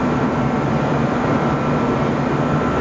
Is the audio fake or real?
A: real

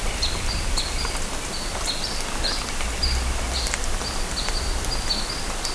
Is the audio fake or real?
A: real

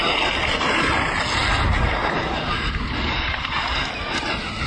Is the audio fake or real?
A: real